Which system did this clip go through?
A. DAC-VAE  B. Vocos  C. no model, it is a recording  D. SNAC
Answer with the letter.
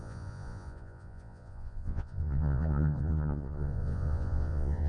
B